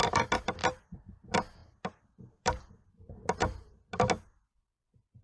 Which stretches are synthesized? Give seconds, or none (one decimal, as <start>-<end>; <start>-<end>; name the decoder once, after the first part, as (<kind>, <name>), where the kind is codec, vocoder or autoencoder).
0.6-1.1 (vocoder, BigVGAN v2); 1.6-2.6